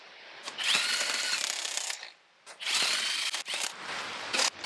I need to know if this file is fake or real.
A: real